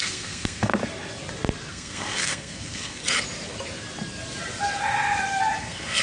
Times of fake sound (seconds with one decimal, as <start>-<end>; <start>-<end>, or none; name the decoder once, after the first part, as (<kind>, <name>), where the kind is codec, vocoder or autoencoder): 0.0-0.7 (codec, SNAC); 1.7-3.0; 5.6-6.0